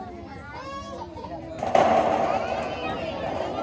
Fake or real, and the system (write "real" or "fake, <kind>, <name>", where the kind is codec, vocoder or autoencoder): real